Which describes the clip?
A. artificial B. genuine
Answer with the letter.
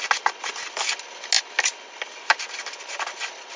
B